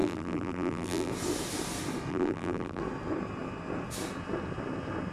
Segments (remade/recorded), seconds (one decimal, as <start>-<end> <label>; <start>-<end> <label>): 0.0-1.1 remade; 1.1-2.1 recorded; 2.1-2.8 remade; 2.8-5.1 recorded